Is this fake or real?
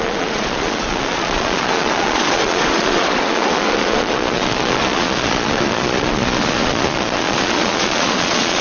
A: fake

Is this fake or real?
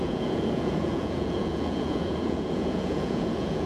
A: fake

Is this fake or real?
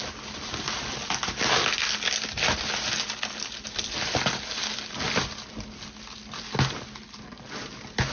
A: real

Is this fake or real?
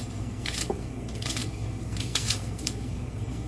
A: fake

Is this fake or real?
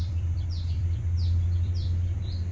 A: fake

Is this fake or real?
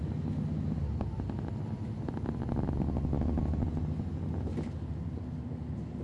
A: real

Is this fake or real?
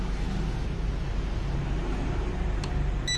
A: real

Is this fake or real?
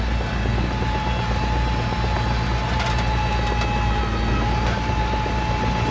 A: real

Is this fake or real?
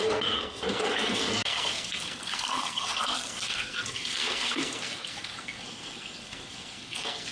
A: fake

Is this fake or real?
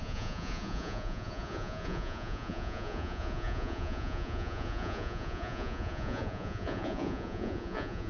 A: fake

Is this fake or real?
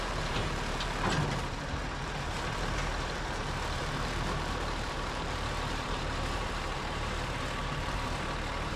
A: fake